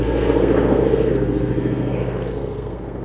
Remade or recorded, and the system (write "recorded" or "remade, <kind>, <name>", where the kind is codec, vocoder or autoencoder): remade, codec, SNAC